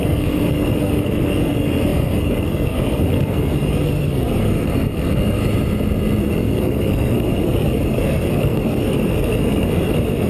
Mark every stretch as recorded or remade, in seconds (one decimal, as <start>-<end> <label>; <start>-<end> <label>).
0.0-5.4 remade; 5.4-6.2 recorded; 6.2-10.3 remade